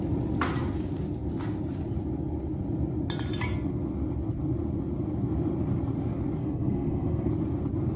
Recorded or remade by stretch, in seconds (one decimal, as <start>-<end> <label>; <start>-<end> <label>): 0.0-6.4 recorded; 6.4-7.3 remade; 7.3-8.0 recorded